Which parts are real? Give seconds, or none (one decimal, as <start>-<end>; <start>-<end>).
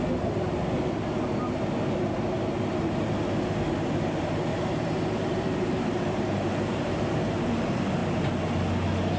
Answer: 0.0-4.5; 7.5-9.2